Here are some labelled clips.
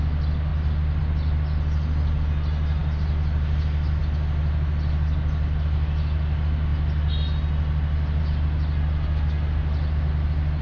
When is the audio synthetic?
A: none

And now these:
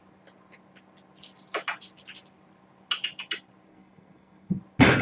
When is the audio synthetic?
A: 3.7-4.6

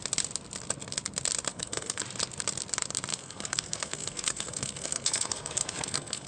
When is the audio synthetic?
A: 1.5-2.0; 3.1-6.3

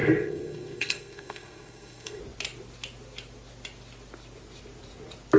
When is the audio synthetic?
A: 0.0-2.2